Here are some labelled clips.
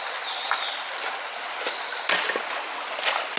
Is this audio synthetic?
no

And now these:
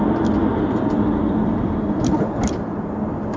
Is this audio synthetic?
no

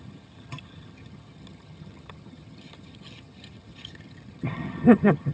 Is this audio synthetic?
yes